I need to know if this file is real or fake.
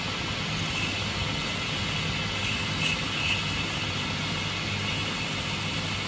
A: real